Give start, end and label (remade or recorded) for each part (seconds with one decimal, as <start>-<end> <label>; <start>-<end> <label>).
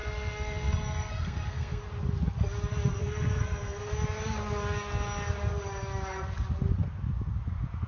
0.0-1.8 remade; 1.8-2.9 recorded; 2.9-3.9 remade; 3.9-7.9 recorded